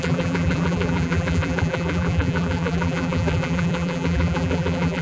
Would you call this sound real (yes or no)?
no